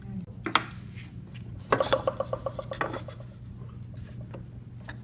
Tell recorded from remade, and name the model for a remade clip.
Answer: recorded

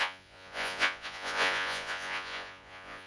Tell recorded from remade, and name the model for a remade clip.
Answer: remade, vocoder, Vocos